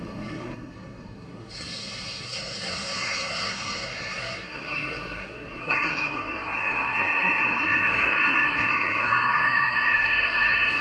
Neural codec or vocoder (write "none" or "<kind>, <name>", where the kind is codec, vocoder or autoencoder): codec, SNAC